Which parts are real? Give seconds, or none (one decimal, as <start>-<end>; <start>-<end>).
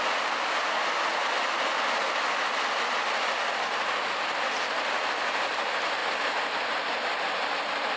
0.0-8.0